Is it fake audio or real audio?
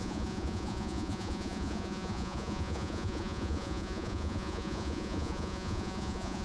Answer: fake